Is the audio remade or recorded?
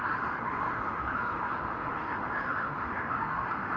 remade